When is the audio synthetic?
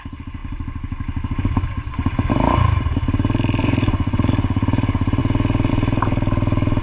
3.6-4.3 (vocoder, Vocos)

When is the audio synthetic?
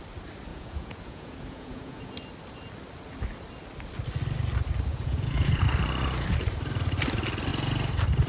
0.5-2.1 (vocoder, Vocos); 4.9-5.6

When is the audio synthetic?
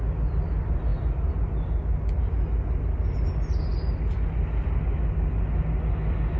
none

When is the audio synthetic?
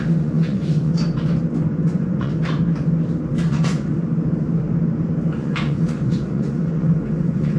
0.0-0.9 (vocoder, Vocos); 1.7-2.4; 3.5-3.9; 5.4-7.6